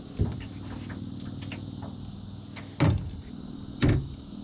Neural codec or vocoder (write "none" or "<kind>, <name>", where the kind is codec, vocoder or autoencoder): none